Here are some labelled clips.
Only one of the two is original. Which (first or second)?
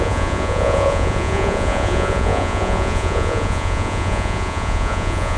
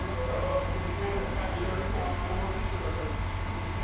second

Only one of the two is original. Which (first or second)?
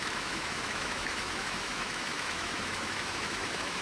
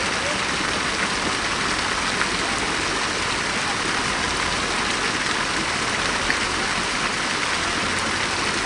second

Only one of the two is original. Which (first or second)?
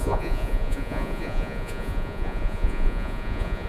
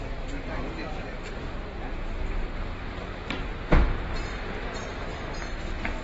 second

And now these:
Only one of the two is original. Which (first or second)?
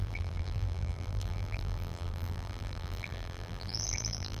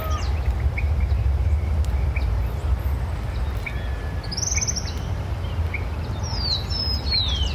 second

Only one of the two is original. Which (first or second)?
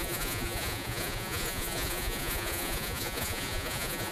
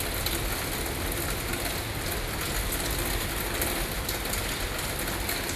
second